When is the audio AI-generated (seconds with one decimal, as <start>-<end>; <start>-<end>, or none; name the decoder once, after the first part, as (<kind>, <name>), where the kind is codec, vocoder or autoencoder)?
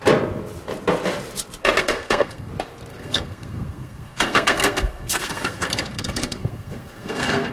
1.8-2.5 (codec, SNAC); 2.9-7.5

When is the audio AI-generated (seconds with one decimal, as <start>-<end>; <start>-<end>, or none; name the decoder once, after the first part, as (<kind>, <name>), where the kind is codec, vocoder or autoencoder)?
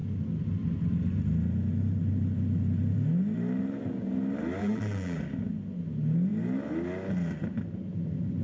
4.6-5.2 (vocoder, BigVGAN v2)